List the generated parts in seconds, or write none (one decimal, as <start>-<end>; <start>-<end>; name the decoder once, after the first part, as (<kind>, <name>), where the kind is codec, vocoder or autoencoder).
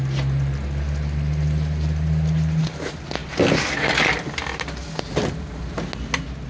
none